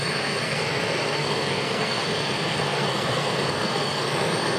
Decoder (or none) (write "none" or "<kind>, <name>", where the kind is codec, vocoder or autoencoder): codec, SNAC